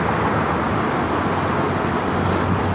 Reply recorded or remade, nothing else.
recorded